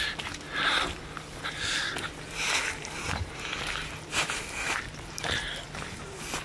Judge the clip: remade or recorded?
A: recorded